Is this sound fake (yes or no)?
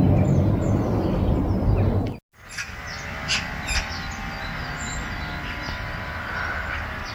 no